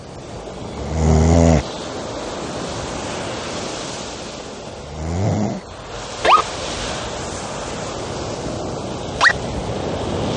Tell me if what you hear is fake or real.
real